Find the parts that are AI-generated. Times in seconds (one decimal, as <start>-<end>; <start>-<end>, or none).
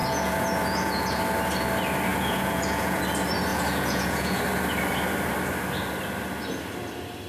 0.0-1.2; 2.1-3.0; 3.5-4.4